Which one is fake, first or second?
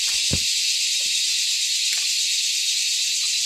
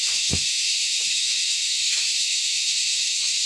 second